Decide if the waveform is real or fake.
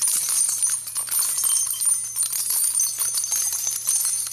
real